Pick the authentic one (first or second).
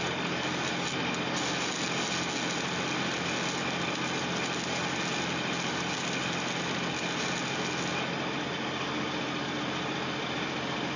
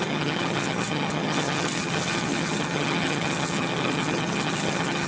first